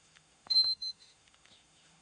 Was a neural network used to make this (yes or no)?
yes